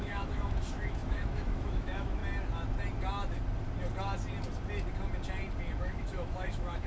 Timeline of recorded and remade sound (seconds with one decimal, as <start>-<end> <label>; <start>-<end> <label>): 0.0-2.2 remade; 2.2-5.8 recorded; 5.8-6.9 remade